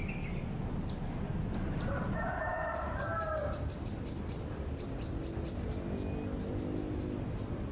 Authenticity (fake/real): real